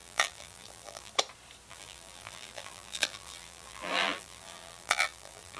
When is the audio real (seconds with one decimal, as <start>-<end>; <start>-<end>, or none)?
1.1-1.7